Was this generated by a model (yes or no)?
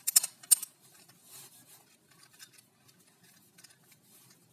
no